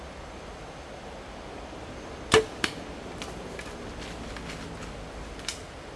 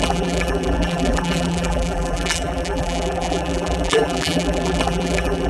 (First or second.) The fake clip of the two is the second